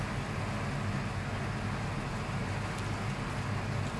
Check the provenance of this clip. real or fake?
real